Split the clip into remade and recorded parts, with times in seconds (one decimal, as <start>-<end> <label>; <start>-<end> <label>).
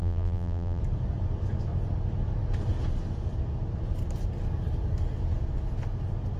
0.0-0.8 remade; 0.8-6.4 recorded